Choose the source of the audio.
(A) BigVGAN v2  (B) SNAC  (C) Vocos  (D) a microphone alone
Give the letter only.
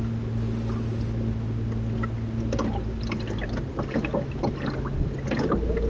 D